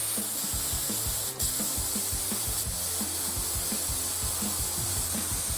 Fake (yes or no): no